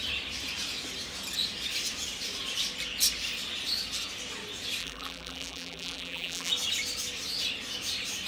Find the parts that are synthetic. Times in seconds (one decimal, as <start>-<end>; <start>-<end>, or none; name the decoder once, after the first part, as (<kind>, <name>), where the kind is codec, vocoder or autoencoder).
4.8-6.5 (vocoder, BigVGAN v2)